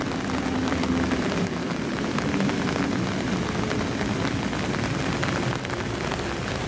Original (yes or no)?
yes